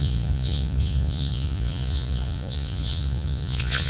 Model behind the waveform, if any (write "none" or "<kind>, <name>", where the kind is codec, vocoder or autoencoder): vocoder, Vocos